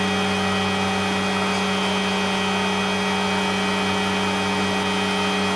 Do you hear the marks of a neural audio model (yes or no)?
no